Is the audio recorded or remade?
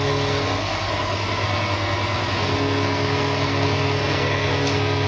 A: remade